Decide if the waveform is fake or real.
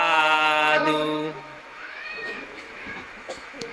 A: fake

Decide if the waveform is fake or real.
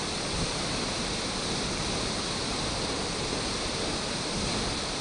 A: real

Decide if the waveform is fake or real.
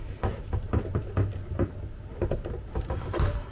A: fake